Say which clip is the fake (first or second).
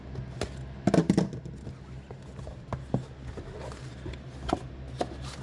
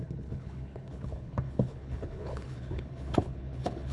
second